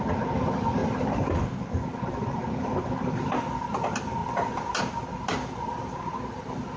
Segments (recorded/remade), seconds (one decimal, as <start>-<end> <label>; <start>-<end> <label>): 0.0-6.8 recorded